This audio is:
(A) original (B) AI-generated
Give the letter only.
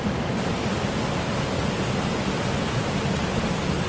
A